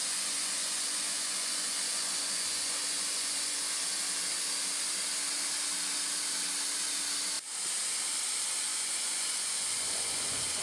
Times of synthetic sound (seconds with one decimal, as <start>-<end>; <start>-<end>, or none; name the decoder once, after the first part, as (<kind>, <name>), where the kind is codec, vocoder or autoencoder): 0.0-3.8 (vocoder, Vocos); 8.7-10.6